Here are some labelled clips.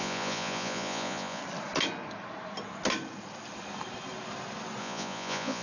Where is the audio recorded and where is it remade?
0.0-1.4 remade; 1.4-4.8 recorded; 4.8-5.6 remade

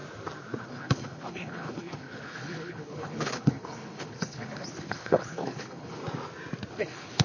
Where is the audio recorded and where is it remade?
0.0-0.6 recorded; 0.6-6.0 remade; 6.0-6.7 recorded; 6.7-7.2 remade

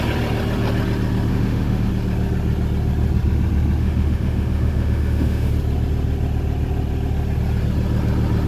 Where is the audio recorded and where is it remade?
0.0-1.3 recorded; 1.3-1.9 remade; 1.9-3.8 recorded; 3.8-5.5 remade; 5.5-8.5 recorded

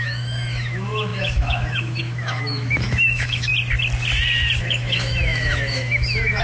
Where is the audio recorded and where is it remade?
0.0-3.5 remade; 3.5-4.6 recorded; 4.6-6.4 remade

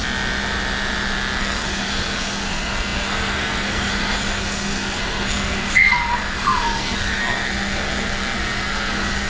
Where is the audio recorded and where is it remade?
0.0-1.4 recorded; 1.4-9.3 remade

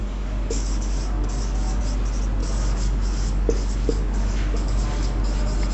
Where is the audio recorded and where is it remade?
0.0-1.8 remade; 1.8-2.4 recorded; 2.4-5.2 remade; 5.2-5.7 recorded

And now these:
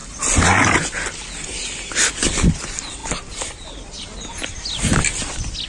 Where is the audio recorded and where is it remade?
0.0-5.7 recorded